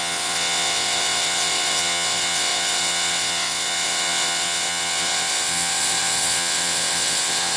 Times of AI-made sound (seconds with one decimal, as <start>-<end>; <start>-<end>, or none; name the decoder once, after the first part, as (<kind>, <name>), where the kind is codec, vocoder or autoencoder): 0.0-7.6 (vocoder, WaveNeXt)